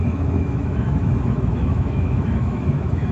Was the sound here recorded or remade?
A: remade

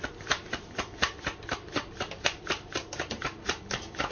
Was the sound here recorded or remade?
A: recorded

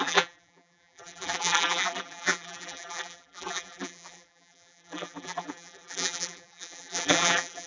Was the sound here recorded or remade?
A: remade